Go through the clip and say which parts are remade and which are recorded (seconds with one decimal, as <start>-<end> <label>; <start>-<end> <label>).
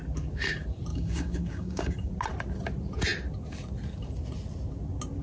0.0-0.9 recorded; 0.9-2.1 remade; 2.1-5.2 recorded